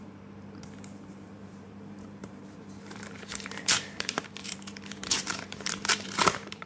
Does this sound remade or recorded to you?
remade